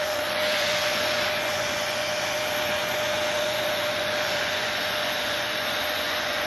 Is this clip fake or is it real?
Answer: fake